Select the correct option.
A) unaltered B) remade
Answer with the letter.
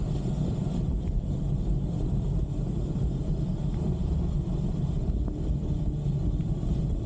A